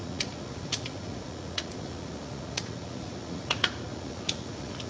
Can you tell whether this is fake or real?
fake